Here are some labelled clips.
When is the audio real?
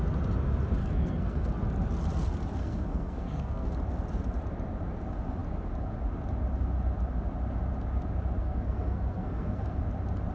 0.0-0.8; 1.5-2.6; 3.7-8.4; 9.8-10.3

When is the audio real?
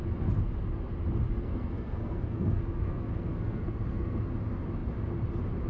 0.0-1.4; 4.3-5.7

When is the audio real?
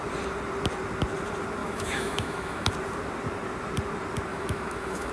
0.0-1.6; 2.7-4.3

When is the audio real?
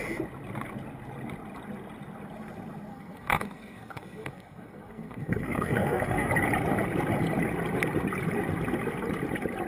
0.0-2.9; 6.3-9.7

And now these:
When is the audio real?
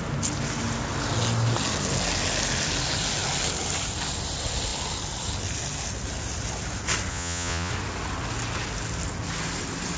0.0-7.1; 7.7-10.0